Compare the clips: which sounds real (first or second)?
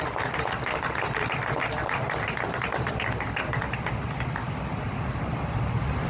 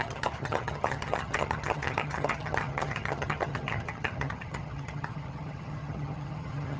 first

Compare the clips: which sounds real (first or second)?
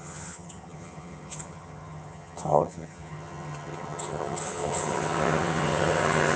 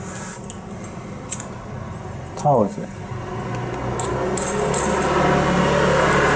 second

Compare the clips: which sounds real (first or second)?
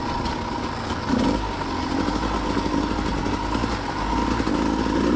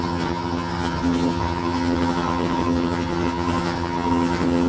first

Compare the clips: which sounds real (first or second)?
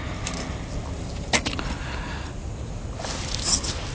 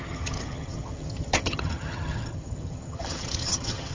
first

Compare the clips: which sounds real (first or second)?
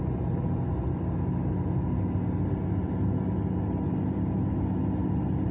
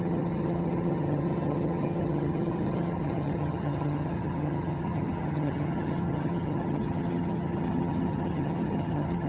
first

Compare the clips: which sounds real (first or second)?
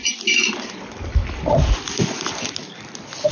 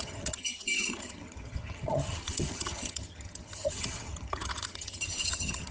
first